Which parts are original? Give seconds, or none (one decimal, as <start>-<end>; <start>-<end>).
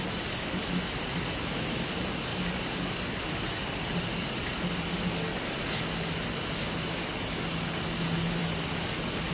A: 0.0-9.3